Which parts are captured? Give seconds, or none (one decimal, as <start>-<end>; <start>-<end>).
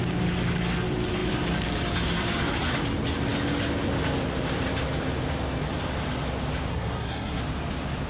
0.0-6.7; 7.4-8.1